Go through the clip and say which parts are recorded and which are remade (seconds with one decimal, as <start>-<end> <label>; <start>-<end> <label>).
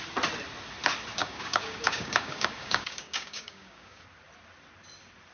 0.0-1.2 recorded; 1.2-4.0 remade; 4.0-5.3 recorded